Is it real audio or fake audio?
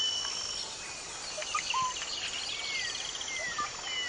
real